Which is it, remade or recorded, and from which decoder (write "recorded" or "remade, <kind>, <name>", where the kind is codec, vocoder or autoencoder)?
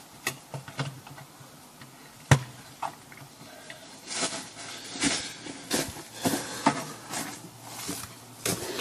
recorded